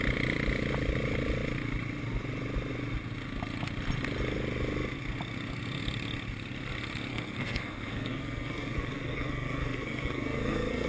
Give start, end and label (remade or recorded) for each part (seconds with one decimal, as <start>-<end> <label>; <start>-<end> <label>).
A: 0.0-7.1 recorded; 7.1-10.9 remade